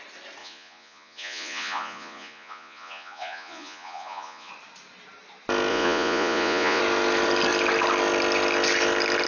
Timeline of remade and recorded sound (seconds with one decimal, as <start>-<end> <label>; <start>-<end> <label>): 0.0-0.4 recorded; 0.4-4.5 remade; 4.5-5.7 recorded; 5.7-6.8 remade; 6.8-9.3 recorded